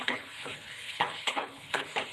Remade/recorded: remade